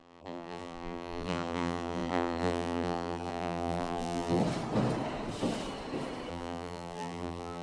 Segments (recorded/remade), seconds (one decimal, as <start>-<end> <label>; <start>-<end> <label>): 0.0-4.4 remade; 4.4-6.3 recorded; 6.3-7.6 remade